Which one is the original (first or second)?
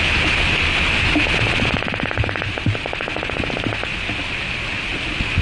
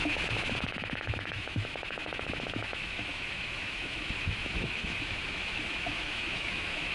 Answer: first